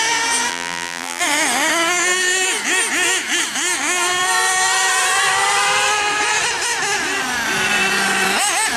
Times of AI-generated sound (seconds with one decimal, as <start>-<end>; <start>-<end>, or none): 0.5-1.2